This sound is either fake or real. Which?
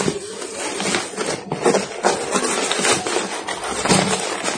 real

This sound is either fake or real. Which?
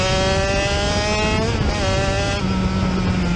real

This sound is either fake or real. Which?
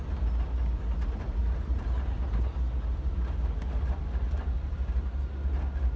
real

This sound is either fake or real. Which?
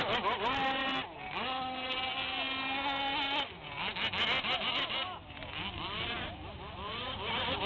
real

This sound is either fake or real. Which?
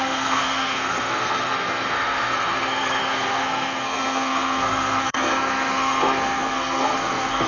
fake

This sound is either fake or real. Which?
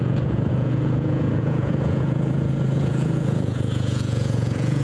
fake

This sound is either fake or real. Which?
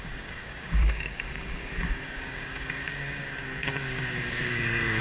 fake